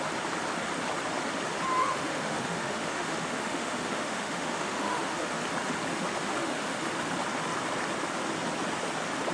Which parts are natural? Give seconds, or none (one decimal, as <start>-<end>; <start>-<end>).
0.0-1.8; 5.4-5.9; 6.8-9.3